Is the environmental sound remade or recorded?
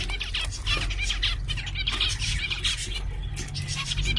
recorded